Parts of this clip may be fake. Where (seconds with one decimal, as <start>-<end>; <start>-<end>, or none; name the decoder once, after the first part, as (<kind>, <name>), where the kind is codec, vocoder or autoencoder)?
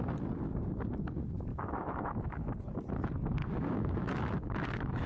1.5-2.5 (autoencoder, DAC-VAE); 3.4-5.1